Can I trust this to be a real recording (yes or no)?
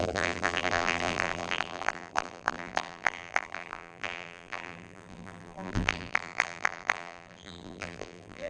no